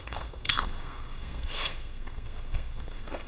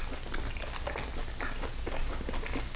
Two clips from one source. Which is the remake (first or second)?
first